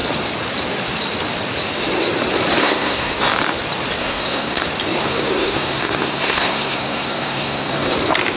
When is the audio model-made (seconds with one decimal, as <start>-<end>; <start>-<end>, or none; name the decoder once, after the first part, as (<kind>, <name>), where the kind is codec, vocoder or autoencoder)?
2.6-3.2 (codec, SNAC); 4.0-4.6; 5.0-7.9